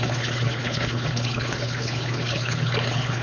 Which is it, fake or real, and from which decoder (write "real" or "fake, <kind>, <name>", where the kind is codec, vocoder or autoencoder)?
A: fake, codec, HILCodec